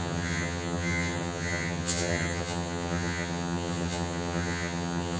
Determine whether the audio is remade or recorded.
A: remade